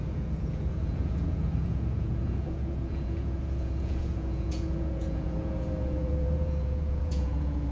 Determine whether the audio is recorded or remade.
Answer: remade